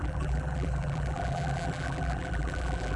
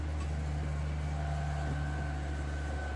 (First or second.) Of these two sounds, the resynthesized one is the first